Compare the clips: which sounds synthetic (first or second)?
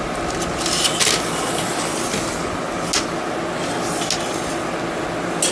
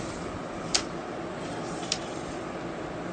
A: second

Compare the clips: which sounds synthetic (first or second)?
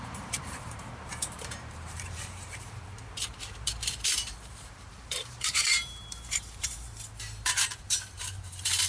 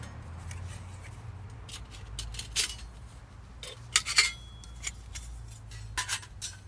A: first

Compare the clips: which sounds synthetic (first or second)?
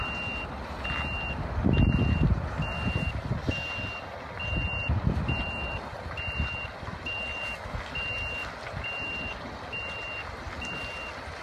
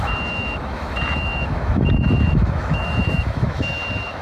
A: second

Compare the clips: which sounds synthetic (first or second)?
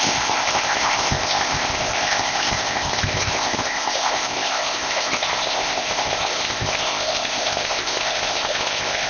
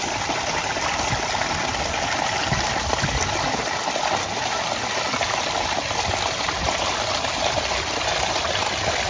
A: first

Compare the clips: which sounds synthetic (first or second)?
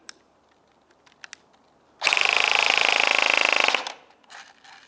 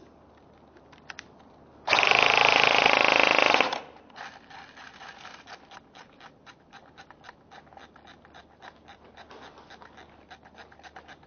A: second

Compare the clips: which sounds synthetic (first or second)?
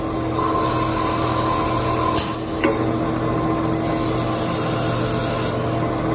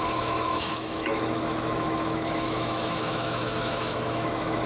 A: second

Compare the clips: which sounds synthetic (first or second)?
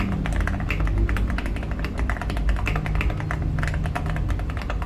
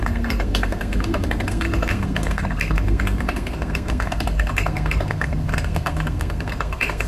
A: second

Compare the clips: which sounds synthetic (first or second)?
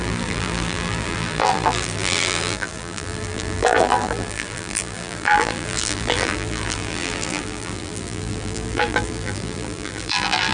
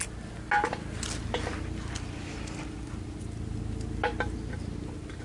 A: first